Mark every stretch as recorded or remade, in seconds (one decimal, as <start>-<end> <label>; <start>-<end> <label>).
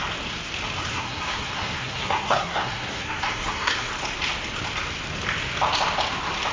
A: 0.0-0.9 recorded; 0.9-3.9 remade; 3.9-6.5 recorded